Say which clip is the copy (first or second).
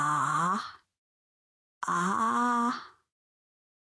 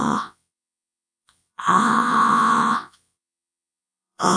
second